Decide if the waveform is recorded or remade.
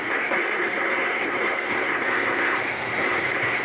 remade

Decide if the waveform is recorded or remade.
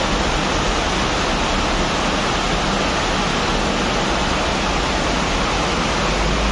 recorded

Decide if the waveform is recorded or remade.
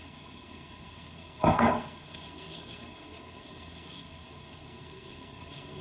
remade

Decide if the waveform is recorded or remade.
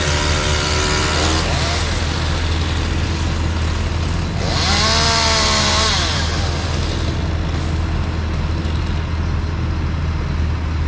recorded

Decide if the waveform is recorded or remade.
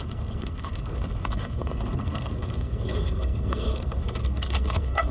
remade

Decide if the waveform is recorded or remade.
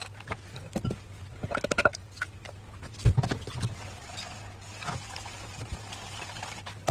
recorded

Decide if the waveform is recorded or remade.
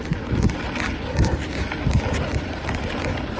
recorded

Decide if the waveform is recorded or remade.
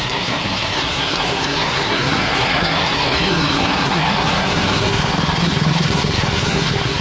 remade